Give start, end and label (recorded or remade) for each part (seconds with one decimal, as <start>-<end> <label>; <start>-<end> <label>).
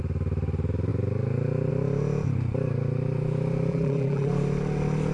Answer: 0.0-3.7 recorded; 3.7-4.3 remade; 4.3-5.1 recorded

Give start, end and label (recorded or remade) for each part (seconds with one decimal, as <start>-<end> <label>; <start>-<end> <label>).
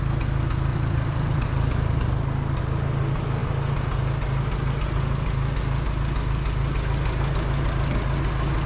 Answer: 0.0-0.7 recorded; 0.7-2.1 remade; 2.1-8.7 recorded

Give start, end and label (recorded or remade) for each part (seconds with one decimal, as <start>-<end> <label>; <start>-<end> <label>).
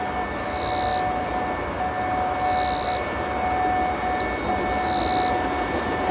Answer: 0.0-6.1 recorded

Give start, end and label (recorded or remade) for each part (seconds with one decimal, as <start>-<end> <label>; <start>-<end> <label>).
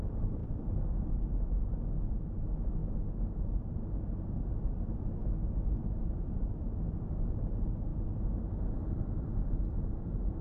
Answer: 0.0-2.8 remade; 2.8-4.5 recorded; 4.5-7.9 remade; 7.9-8.8 recorded; 8.8-10.4 remade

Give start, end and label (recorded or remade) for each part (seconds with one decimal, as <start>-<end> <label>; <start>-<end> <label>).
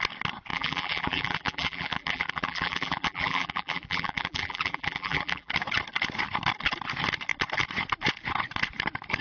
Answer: 0.0-0.5 recorded; 0.5-5.5 remade; 5.5-9.2 recorded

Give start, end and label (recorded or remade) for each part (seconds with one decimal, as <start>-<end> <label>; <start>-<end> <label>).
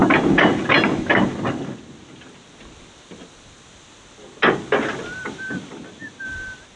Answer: 0.0-6.8 recorded